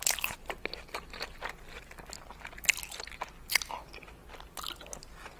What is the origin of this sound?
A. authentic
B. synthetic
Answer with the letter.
A